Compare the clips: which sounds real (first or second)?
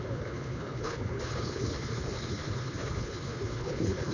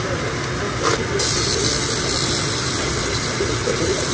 second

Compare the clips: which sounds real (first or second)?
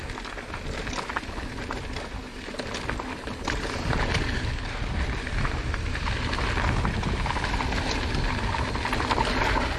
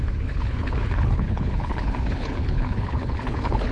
first